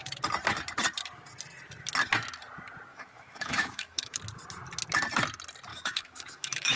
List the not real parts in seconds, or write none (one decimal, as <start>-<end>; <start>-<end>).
2.9-4.2; 5.7-6.8